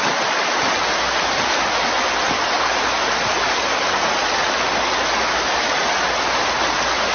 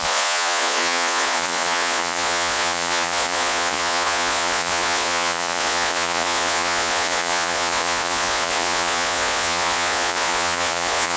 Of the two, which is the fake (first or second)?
second